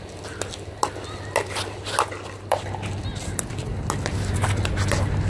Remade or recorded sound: recorded